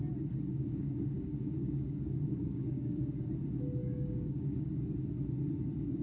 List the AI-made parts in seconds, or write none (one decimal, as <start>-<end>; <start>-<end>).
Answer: 0.5-3.3; 3.8-4.7